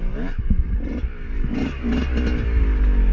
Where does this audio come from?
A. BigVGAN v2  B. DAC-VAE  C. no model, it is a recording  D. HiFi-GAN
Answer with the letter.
C